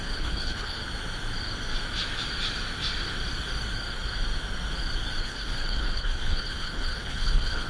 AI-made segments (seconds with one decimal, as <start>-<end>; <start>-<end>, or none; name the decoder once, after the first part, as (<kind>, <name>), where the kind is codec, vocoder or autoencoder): 0.0-0.8 (codec, HILCodec); 5.2-7.7